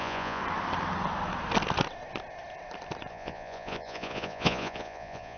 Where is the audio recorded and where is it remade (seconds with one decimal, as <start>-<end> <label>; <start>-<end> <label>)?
0.0-0.4 remade; 0.4-3.1 recorded; 3.1-5.4 remade